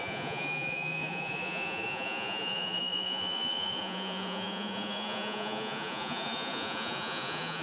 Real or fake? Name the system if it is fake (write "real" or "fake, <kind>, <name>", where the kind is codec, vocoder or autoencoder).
fake, vocoder, Vocos